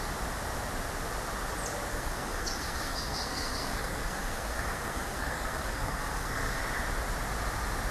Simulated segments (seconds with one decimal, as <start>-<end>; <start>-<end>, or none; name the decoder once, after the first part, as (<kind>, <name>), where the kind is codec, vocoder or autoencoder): 1.9-6.6 (codec, SNAC)